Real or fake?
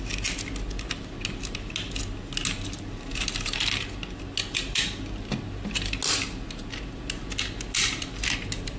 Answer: real